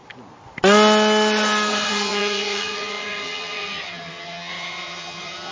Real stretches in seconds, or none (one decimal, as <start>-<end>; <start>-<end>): 0.0-1.7